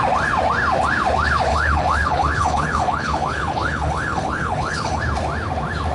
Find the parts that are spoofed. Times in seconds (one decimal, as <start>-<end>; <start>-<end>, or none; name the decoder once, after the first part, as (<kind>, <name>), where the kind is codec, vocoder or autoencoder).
1.5-5.0 (codec, HILCodec)